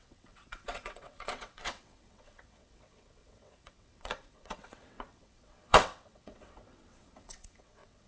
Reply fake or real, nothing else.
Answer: fake